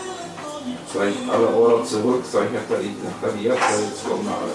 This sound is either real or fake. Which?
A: real